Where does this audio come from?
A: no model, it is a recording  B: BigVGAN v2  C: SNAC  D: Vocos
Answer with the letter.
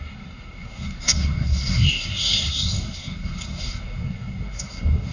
C